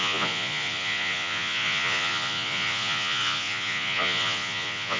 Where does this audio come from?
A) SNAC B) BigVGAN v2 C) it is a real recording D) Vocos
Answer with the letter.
D